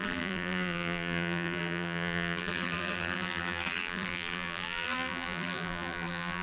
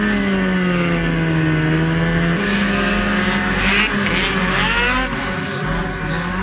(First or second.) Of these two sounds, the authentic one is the second